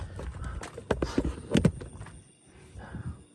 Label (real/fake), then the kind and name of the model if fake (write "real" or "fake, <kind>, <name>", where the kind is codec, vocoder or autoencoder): real